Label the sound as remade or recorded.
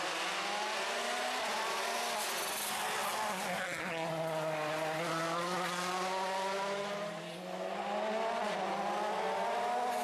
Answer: recorded